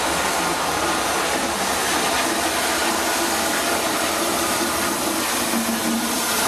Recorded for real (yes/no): yes